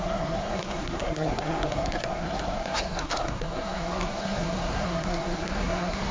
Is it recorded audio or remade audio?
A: remade